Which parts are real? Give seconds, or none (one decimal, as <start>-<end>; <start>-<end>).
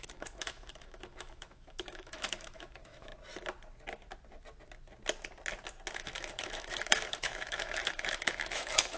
3.1-5.9